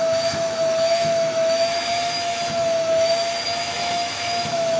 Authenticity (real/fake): fake